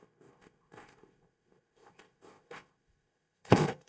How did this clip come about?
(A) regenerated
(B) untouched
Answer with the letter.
A